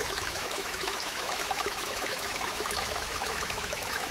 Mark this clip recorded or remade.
remade